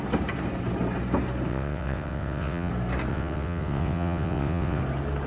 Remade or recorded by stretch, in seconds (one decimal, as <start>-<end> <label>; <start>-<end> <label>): 0.0-1.5 recorded; 1.5-2.7 remade; 2.7-3.1 recorded; 3.1-4.8 remade; 4.8-5.3 recorded